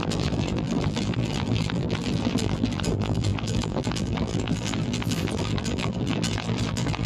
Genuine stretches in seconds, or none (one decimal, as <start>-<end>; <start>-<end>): none